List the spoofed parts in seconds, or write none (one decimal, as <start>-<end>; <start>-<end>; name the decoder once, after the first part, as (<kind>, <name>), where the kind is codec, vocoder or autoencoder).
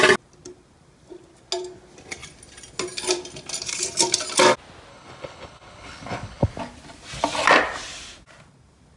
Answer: 4.9-6.5 (codec, HILCodec)